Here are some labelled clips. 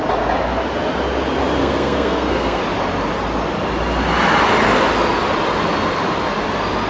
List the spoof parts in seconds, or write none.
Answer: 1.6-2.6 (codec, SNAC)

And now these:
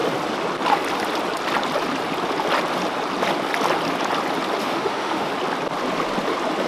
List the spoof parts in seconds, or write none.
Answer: 4.6-5.3 (autoencoder, DAC-VAE)